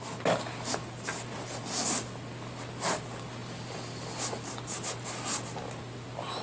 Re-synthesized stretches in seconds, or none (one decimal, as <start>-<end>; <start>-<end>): none

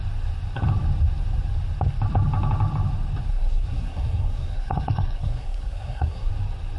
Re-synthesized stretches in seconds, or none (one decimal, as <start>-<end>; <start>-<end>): 3.3-6.3

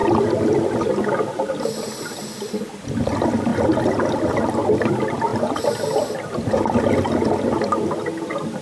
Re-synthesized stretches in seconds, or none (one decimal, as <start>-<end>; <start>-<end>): none

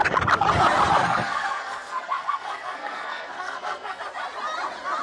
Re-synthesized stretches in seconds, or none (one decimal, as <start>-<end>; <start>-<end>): 1.0-4.0